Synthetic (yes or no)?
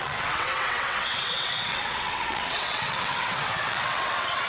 yes